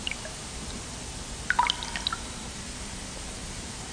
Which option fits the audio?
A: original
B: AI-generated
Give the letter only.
B